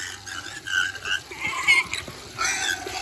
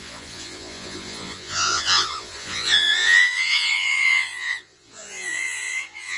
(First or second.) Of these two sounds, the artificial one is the second